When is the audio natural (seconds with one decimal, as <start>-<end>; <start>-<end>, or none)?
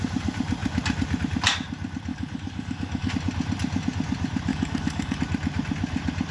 0.0-2.1; 3.1-4.5; 5.2-6.3